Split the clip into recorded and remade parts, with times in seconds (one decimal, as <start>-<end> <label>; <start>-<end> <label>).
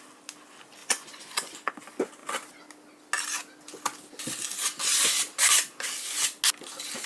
0.0-0.8 recorded; 0.8-1.7 remade; 1.7-7.1 recorded